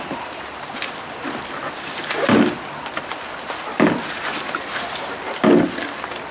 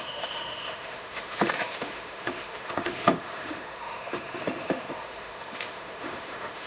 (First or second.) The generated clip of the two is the second